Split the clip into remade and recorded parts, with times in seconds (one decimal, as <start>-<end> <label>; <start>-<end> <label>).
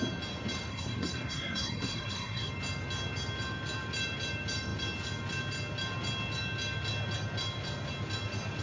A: 0.0-0.7 recorded; 0.7-2.5 remade; 2.5-8.6 recorded